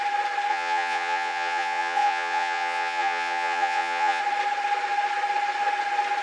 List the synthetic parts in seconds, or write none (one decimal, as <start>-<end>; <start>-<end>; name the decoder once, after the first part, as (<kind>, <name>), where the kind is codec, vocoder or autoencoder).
0.5-4.2 (vocoder, Vocos)

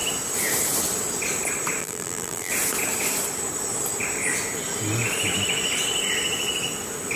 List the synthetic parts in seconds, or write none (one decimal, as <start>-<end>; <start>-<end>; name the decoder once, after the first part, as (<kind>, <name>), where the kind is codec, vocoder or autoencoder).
1.8-2.5 (vocoder, BigVGAN v2)

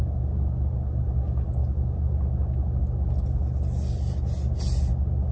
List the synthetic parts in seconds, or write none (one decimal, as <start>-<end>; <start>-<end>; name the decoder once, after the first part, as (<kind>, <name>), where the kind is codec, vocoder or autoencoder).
none

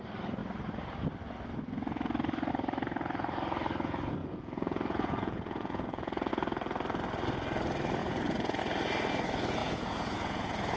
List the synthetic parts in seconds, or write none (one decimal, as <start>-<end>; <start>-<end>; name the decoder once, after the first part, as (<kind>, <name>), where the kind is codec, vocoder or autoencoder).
4.2-6.3 (vocoder, Vocos); 8.0-8.6; 9.6-10.8

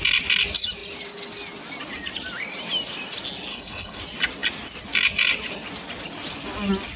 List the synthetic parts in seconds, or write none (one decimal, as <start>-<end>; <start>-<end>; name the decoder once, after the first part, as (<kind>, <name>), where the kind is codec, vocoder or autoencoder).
3.5-4.0 (codec, HILCodec)

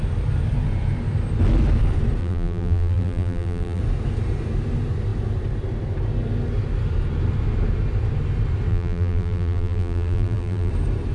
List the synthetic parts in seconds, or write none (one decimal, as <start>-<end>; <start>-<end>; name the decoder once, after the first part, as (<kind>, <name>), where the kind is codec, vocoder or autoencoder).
2.2-3.8 (vocoder, BigVGAN v2); 8.7-10.7